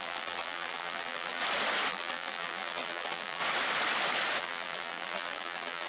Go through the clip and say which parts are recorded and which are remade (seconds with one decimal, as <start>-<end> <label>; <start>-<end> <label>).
0.0-1.4 remade; 1.4-1.9 recorded; 1.9-3.4 remade; 3.4-4.4 recorded; 4.4-5.9 remade